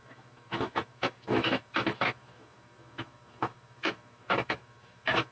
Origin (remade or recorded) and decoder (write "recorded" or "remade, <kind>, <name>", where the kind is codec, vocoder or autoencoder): remade, autoencoder, DAC-VAE